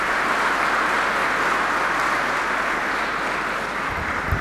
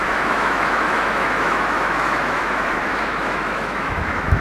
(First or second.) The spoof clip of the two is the second